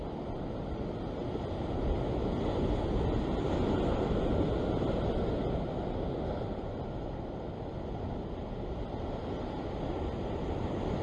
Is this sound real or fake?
real